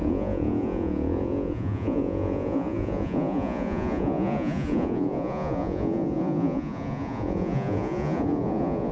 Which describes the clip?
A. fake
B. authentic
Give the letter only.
A